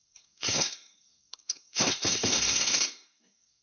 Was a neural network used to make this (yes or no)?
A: yes